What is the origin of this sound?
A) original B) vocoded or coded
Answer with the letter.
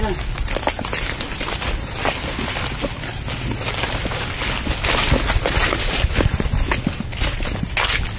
A